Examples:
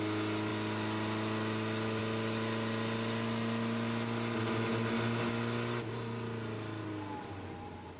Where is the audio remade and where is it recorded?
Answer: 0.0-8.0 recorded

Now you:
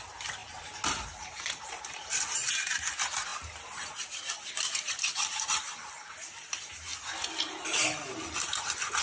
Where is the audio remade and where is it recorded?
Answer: 0.0-9.0 recorded

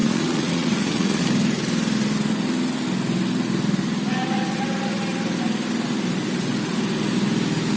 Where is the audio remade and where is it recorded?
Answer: 0.0-1.2 remade; 1.2-7.8 recorded

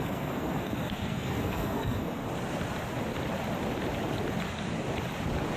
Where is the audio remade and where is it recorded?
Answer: 0.0-2.2 remade; 2.2-5.6 recorded

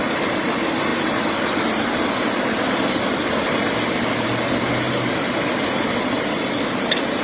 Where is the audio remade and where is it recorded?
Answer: 0.0-7.2 recorded

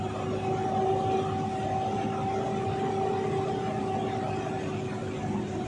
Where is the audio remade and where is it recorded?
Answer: 0.0-5.7 recorded

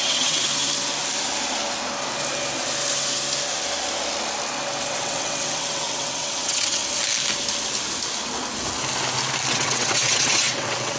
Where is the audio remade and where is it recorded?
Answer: 0.0-0.5 remade; 0.5-4.9 recorded; 4.9-6.8 remade; 6.8-9.5 recorded; 9.5-11.0 remade

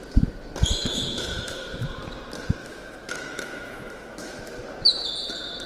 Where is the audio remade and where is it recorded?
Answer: 0.0-0.8 recorded; 0.8-2.0 remade; 2.0-2.6 recorded; 2.6-4.5 remade; 4.5-5.7 recorded